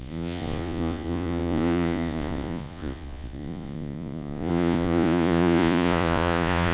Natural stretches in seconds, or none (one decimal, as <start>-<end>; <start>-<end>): none